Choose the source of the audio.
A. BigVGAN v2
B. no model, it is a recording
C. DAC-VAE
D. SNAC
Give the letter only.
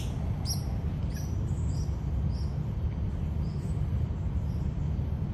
B